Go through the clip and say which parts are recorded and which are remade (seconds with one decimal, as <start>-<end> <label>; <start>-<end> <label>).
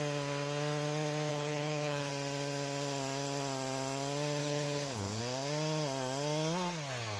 0.0-1.3 recorded; 1.3-2.1 remade; 2.1-4.4 recorded; 4.4-5.2 remade; 5.2-7.2 recorded